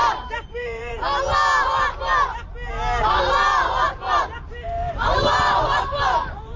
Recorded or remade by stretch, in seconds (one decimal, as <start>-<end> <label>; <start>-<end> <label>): 0.0-0.9 remade; 0.9-3.0 recorded; 3.0-6.6 remade